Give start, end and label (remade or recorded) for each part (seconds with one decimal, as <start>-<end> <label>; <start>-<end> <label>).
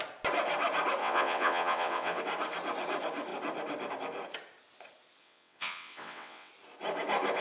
0.0-1.0 recorded; 1.0-2.2 remade; 2.2-5.2 recorded; 5.2-6.5 remade; 6.5-7.4 recorded